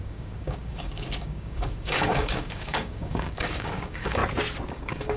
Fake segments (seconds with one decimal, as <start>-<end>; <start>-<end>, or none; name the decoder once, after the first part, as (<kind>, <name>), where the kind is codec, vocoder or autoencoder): 0.0-4.2 (codec, DAC); 4.7-5.2